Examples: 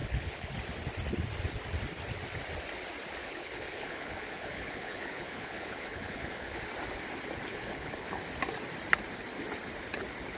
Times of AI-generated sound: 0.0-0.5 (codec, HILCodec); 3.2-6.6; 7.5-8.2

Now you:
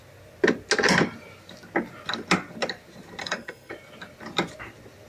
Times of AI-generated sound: 3.2-3.7 (codec, SNAC)

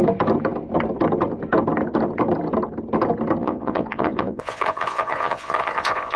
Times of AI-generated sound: 3.4-6.2 (vocoder, Vocos)

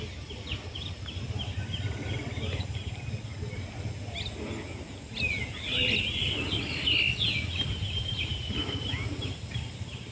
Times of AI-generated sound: 0.0-3.3 (vocoder, BigVGAN v2); 7.3-8.3; 9.5-10.1

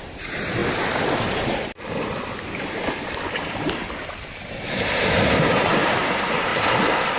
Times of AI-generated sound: 0.0-0.6 (vocoder, BigVGAN v2); 4.7-6.5

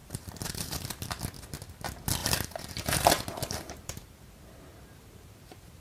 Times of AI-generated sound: 0.0-1.2 (vocoder, BigVGAN v2); 2.2-5.8

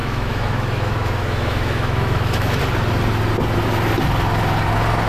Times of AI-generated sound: 0.0-2.6 (autoencoder, DAC-VAE)